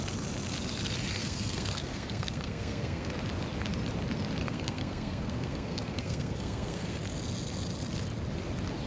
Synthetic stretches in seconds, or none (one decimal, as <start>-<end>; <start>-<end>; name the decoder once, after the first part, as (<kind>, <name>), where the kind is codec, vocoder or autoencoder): 1.2-3.1 (codec, SNAC); 4.4-7.0